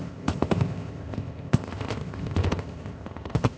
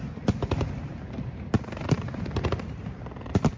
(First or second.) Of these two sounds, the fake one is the first